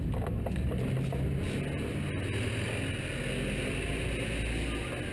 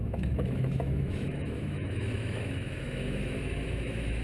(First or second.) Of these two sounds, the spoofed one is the second